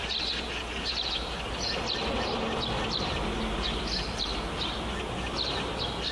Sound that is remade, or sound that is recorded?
recorded